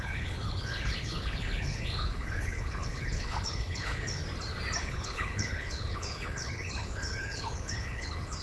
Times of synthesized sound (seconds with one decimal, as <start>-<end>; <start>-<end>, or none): 0.0-4.2; 4.8-8.4